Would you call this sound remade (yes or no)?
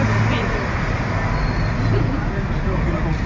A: no